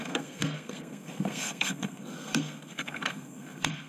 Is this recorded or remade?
remade